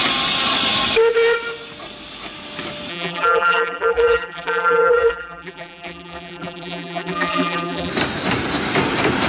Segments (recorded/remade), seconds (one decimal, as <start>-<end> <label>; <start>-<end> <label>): 0.0-2.9 recorded; 2.9-7.9 remade; 7.9-9.3 recorded